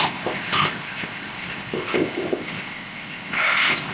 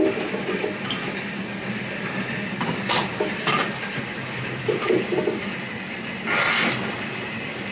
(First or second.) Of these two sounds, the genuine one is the second